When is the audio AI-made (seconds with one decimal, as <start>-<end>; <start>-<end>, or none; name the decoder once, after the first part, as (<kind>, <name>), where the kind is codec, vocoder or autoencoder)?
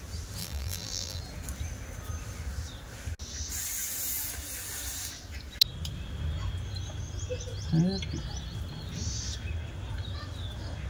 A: 0.4-1.2 (vocoder, BigVGAN v2)